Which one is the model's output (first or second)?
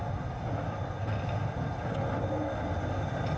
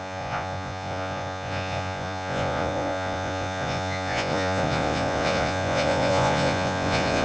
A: second